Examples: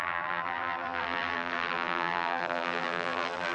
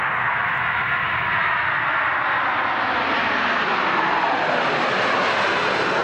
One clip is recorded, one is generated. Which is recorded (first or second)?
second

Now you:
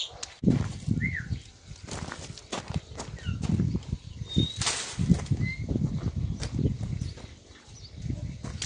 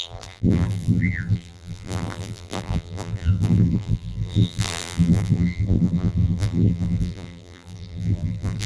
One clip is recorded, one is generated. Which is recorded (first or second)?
first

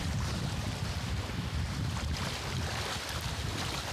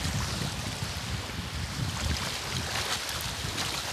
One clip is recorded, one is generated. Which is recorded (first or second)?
second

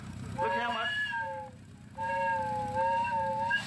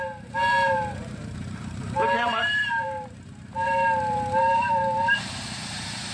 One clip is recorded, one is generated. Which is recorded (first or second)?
first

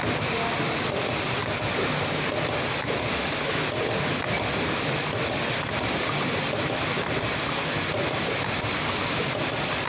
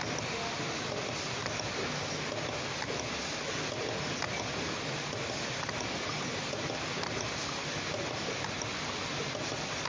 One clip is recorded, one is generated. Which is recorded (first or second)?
second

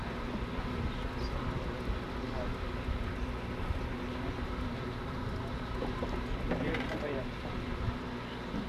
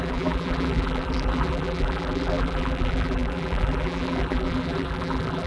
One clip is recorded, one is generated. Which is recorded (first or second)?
first